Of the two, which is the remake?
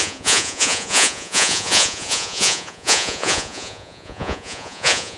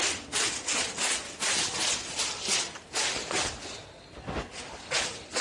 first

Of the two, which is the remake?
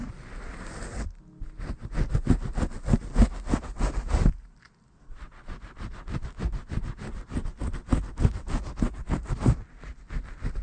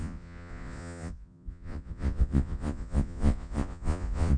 second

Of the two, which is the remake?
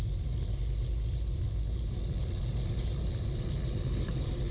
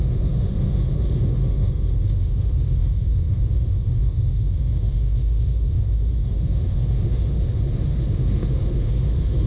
second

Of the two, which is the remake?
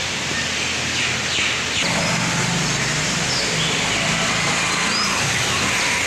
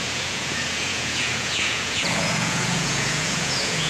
second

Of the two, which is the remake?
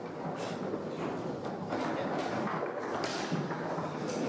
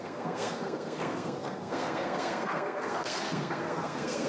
second